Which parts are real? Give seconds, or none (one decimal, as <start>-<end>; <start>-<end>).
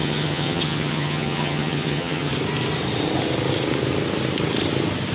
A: 2.3-5.1